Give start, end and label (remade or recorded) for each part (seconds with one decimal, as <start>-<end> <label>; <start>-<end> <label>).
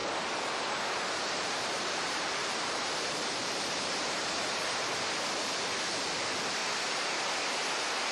0.0-4.9 remade; 4.9-6.6 recorded; 6.6-8.1 remade